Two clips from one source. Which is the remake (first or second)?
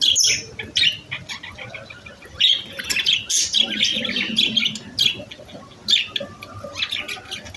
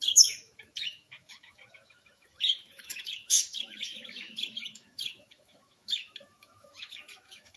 second